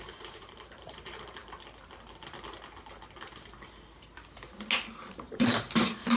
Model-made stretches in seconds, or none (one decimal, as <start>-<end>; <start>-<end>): 0.0-1.4; 5.1-6.2